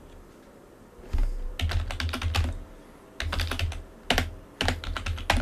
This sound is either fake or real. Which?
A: real